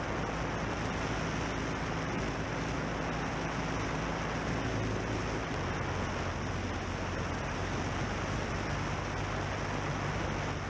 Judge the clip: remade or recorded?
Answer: recorded